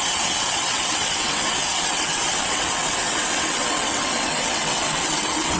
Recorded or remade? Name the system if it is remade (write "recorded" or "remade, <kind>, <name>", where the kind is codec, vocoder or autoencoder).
remade, vocoder, WaveNeXt